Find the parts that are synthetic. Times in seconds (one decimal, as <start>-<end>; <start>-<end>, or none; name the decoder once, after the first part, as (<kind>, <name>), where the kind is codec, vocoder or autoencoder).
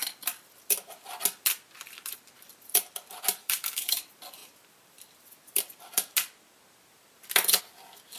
3.4-4.0 (codec, DAC)